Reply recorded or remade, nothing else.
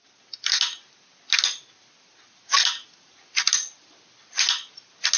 recorded